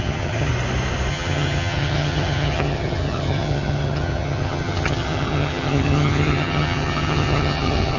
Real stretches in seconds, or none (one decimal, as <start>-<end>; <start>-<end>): 0.5-1.1